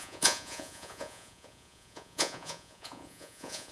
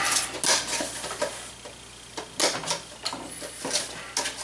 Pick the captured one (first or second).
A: second